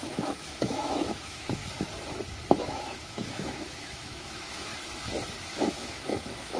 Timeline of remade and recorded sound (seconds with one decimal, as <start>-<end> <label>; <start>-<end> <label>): 0.0-1.6 remade; 1.6-2.6 recorded; 2.6-4.7 remade; 4.7-5.4 recorded; 5.4-6.6 remade